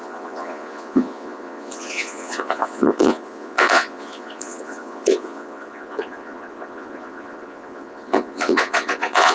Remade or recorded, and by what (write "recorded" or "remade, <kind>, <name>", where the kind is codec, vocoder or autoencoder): remade, vocoder, Vocos